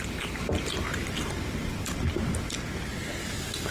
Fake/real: real